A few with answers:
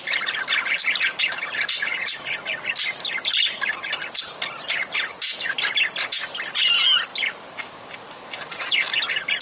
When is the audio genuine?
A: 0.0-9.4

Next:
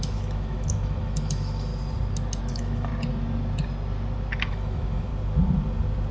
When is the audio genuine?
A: 1.7-2.4; 2.9-4.5; 5.1-6.1

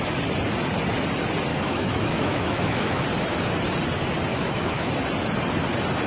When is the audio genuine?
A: 0.0-1.5; 3.0-4.3; 4.9-6.1

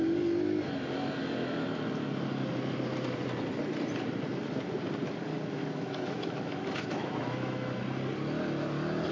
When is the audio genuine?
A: 0.0-5.6; 7.8-9.1